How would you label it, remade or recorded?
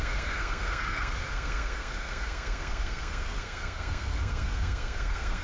remade